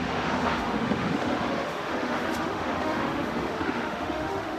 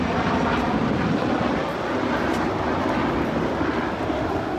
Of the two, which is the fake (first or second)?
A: first